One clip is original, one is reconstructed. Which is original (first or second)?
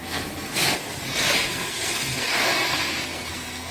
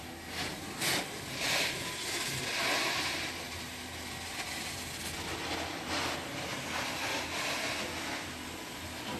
second